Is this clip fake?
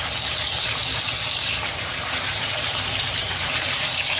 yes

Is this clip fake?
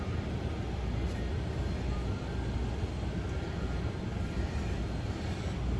no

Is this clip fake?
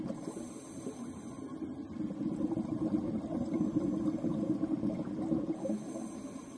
no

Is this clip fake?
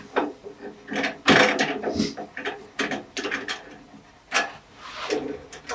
no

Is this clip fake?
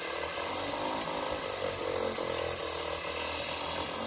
no